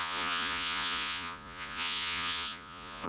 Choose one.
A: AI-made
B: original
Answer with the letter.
A